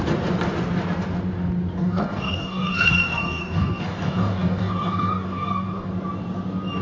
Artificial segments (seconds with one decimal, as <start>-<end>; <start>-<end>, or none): 1.8-5.9